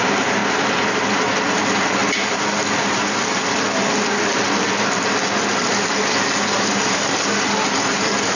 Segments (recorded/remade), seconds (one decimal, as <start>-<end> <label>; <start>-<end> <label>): 0.0-0.4 remade; 0.4-1.5 recorded; 1.5-2.0 remade; 2.0-6.6 recorded; 6.6-8.4 remade